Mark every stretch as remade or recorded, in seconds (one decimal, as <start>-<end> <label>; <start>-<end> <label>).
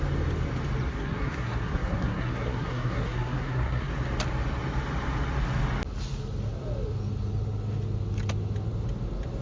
0.0-0.9 recorded; 0.9-3.9 remade; 3.9-9.4 recorded